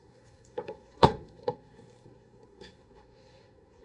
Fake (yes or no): yes